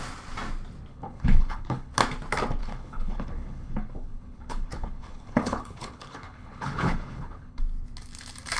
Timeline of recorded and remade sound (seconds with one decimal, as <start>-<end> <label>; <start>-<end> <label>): 0.0-0.9 recorded; 0.9-1.9 remade; 1.9-2.6 recorded; 2.6-7.6 remade; 7.6-8.6 recorded